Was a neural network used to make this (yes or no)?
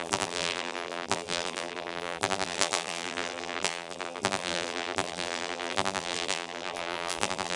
yes